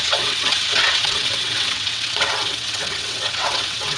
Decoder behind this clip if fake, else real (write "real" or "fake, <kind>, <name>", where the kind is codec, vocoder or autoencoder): fake, vocoder, WaveNeXt